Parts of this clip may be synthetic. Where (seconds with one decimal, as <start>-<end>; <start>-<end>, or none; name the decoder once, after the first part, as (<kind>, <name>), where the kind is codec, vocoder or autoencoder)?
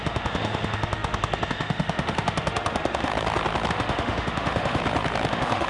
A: 0.0-3.1 (autoencoder, DAC-VAE); 3.7-4.8; 5.3-5.7